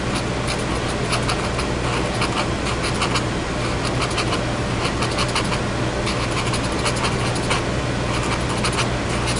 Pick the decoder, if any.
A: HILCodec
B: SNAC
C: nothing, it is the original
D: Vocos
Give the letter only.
C